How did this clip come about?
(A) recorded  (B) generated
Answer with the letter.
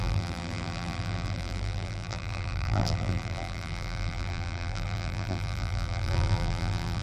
B